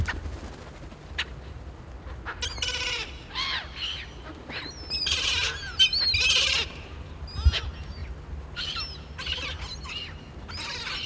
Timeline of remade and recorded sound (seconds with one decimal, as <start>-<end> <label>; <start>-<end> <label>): 0.0-11.1 recorded